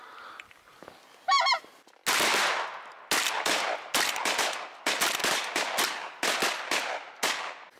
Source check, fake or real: real